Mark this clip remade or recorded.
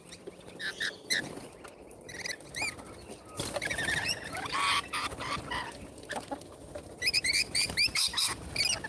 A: recorded